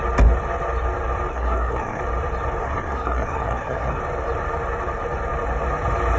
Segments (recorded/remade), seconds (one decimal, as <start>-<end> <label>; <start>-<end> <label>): 0.0-1.3 recorded; 1.3-2.0 remade; 2.0-2.6 recorded; 2.6-4.0 remade; 4.0-6.2 recorded